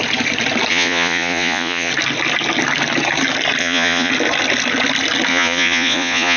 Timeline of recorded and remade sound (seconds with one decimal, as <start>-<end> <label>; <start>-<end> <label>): 0.0-0.7 recorded; 0.7-1.9 remade; 1.9-3.6 recorded; 3.6-4.1 remade; 4.1-5.3 recorded; 5.3-6.4 remade